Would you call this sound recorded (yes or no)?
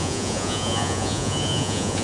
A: no